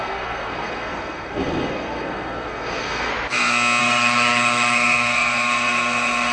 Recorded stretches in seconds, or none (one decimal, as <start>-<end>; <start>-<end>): 3.1-3.8